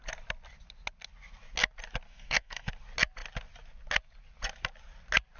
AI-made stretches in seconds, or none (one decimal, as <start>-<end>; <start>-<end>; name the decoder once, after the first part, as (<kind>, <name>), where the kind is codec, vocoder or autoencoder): 2.1-2.7 (codec, SNAC)